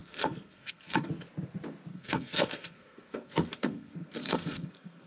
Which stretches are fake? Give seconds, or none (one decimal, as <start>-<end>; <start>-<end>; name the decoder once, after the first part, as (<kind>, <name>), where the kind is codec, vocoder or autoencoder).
0.0-1.1 (codec, SNAC); 1.9-5.1